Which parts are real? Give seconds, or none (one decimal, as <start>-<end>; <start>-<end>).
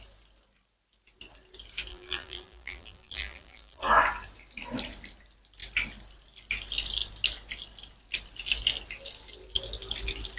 0.0-1.9; 3.8-10.4